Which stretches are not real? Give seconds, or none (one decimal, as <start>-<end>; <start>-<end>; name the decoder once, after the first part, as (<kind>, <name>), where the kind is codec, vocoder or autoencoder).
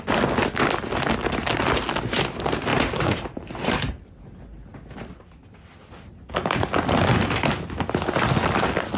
2.7-4.1 (vocoder, BigVGAN v2)